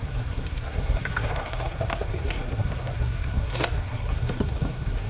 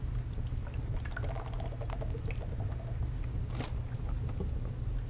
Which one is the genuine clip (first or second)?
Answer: second